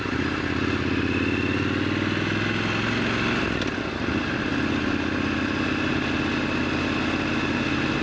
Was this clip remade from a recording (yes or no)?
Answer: no